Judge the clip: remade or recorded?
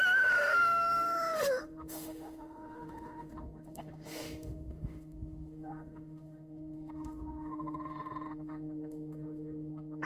remade